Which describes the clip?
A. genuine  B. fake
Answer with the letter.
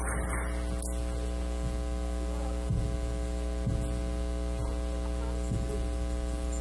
A